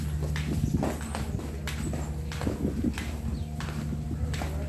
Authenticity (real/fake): real